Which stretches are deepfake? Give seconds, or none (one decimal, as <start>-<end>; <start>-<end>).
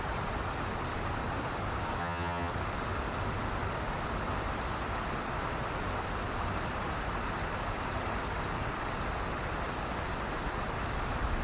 2.0-2.5